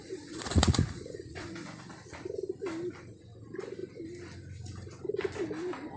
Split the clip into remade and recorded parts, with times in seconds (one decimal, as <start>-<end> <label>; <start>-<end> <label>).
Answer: 0.0-1.5 remade; 1.5-6.0 recorded